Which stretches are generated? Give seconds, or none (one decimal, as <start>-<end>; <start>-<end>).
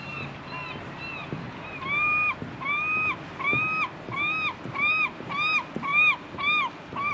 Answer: none